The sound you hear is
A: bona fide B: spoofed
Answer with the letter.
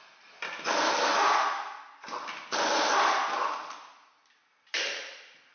A